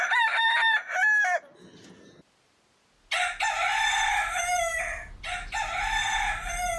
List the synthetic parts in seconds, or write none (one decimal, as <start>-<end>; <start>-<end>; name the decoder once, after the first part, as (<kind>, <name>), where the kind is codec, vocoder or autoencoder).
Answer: 4.1-4.8 (autoencoder, DAC-VAE)